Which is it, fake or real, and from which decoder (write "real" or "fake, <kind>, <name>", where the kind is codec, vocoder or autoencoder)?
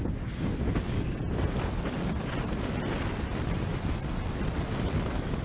real